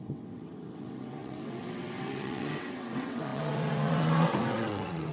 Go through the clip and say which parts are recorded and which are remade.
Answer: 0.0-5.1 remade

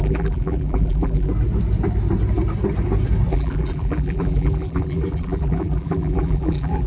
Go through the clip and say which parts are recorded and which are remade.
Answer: 0.0-1.3 remade; 1.3-3.3 recorded; 3.3-6.9 remade